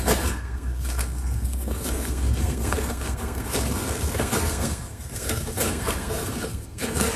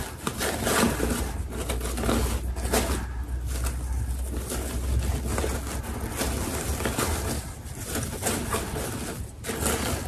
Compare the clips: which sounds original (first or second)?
second